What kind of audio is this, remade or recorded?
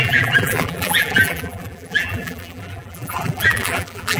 remade